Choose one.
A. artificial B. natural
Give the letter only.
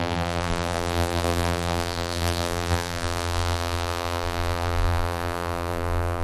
A